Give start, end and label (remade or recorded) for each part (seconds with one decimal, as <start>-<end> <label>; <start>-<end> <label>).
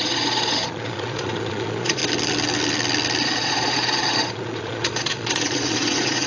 0.0-2.0 remade; 2.0-3.2 recorded; 3.2-6.3 remade